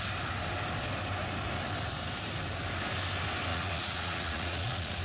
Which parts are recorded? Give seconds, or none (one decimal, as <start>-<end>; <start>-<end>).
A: 0.0-3.5